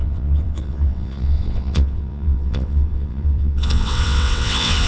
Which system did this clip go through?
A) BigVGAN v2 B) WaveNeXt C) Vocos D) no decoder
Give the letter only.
B